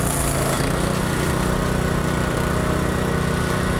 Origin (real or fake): real